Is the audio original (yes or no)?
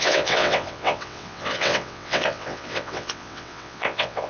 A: no